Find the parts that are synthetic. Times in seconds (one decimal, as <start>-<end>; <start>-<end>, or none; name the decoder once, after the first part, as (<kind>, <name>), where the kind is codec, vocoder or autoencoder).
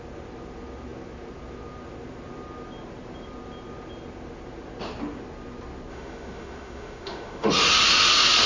5.9-7.5 (autoencoder, DAC-VAE)